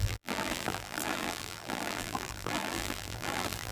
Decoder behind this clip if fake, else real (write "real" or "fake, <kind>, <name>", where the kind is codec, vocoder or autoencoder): fake, vocoder, BigVGAN v2